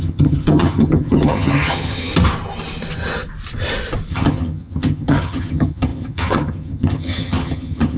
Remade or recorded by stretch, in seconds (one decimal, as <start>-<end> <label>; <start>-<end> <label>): 0.0-2.1 remade; 2.1-4.1 recorded; 4.1-8.0 remade